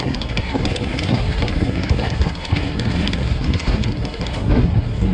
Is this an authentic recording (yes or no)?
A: no